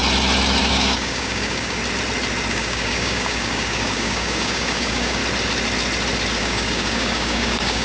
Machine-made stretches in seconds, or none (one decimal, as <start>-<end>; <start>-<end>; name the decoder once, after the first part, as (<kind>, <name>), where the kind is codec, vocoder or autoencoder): 0.6-1.8 (codec, DAC); 2.5-5.2; 6.4-7.8